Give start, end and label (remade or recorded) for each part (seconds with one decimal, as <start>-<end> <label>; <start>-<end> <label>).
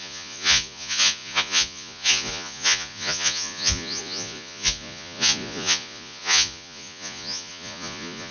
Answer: 0.0-8.3 remade